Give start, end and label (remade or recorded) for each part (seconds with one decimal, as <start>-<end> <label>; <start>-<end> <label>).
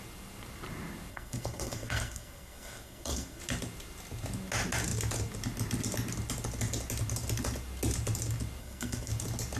0.0-1.1 recorded; 1.1-3.4 remade; 3.4-8.6 recorded; 8.6-9.1 remade; 9.1-9.6 recorded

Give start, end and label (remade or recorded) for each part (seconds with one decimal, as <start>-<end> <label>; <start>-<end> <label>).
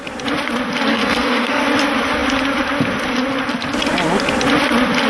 0.0-0.9 recorded; 0.9-1.6 remade; 1.6-5.1 recorded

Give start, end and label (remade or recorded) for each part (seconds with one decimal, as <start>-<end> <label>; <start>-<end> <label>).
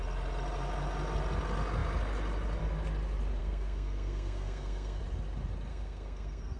0.0-3.4 recorded; 3.4-5.0 remade; 5.0-5.7 recorded; 5.7-6.6 remade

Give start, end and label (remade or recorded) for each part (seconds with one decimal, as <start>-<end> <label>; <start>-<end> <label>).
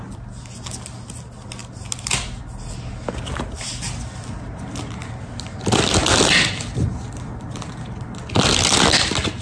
0.0-9.4 recorded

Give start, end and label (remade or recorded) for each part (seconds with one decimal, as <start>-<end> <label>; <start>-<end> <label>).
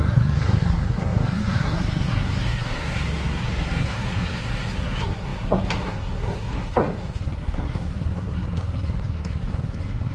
0.0-10.1 remade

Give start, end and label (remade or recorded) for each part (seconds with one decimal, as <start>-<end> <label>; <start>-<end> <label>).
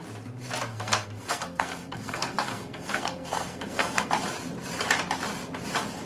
0.0-0.7 recorded; 0.7-4.1 remade; 4.1-6.1 recorded